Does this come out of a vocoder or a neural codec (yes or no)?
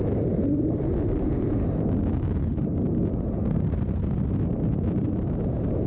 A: no